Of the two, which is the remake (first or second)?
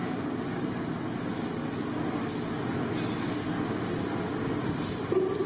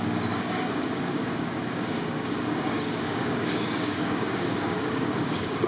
second